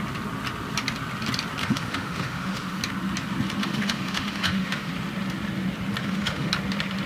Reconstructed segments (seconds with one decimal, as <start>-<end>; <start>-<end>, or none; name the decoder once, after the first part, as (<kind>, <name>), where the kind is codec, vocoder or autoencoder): 1.6-2.8 (autoencoder, DAC-VAE); 3.6-4.9; 6.0-6.5